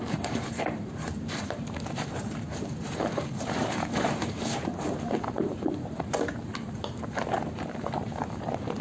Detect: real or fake fake